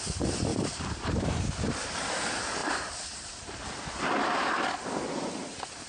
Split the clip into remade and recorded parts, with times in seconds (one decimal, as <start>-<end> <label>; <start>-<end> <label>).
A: 0.0-0.5 recorded; 0.5-1.2 remade; 1.2-2.6 recorded; 2.6-4.0 remade; 4.0-5.9 recorded